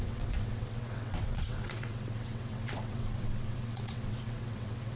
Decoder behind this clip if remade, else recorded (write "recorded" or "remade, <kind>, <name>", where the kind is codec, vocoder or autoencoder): remade, vocoder, WaveNeXt